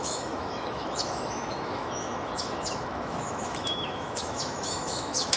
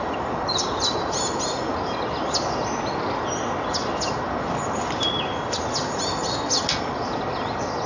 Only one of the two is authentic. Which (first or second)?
second